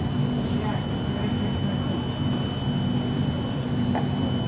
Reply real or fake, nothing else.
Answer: real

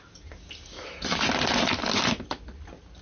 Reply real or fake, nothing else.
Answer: real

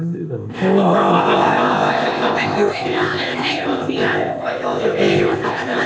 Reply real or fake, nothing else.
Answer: fake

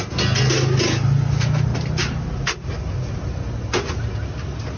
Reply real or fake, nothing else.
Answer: real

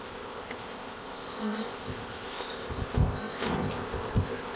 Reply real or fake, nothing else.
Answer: fake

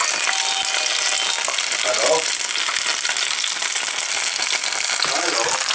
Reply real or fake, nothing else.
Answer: real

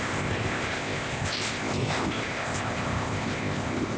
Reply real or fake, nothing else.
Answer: fake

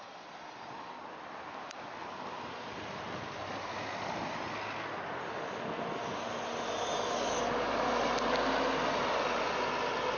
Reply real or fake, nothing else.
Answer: real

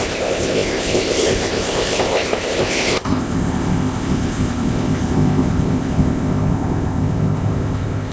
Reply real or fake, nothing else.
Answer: fake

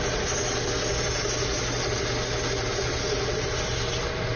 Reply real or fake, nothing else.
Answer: real